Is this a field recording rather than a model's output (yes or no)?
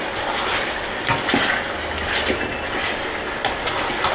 yes